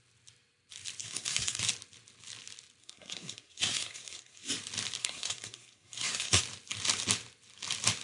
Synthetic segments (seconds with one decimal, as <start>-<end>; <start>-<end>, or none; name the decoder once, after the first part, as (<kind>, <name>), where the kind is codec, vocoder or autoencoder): 1.0-1.6 (codec, SNAC); 2.8-4.5; 5.0-6.4